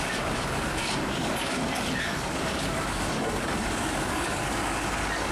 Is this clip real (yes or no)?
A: no